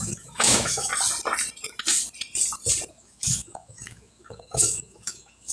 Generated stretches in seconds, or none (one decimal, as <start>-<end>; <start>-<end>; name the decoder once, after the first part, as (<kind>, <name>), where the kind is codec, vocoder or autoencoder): 0.0-0.9 (autoencoder, DAC-VAE); 2.9-5.5